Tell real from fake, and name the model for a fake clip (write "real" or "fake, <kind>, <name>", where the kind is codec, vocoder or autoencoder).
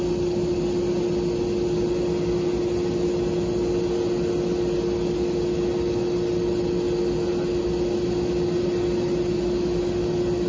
real